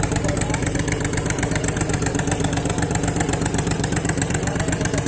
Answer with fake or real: fake